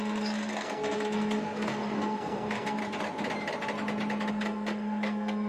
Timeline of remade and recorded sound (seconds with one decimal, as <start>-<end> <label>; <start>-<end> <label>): 0.0-2.8 remade; 2.8-4.3 recorded; 4.3-5.5 remade